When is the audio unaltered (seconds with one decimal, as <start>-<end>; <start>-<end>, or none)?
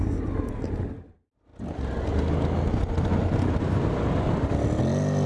0.0-5.3